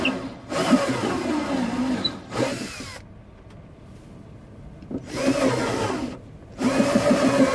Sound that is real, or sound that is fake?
real